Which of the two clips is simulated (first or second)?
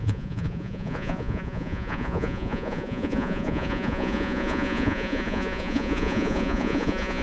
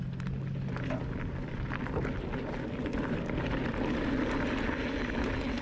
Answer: first